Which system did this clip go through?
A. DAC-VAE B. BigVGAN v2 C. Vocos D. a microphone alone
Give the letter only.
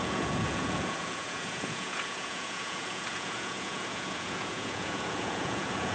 C